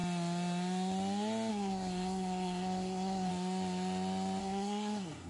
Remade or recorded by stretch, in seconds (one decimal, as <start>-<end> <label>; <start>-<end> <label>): 0.0-1.5 recorded; 1.5-3.3 remade; 3.3-4.4 recorded; 4.4-5.3 remade